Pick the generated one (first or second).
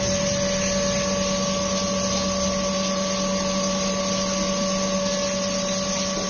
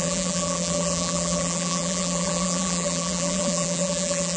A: second